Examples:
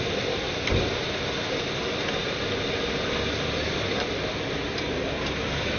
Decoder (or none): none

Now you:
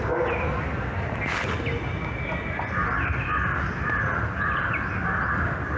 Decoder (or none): none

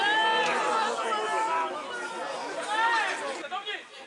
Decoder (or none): none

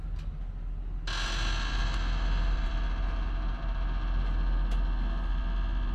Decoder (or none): none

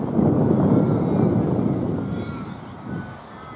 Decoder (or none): none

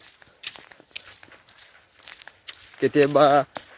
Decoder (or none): none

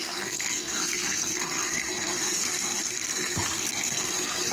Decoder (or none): codec, SNAC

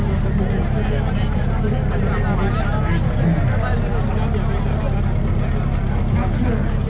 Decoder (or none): none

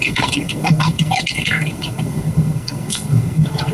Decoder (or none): codec, SNAC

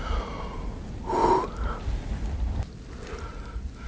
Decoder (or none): none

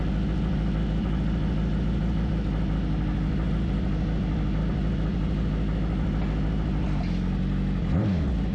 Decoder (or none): none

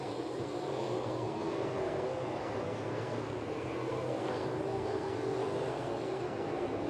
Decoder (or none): codec, SNAC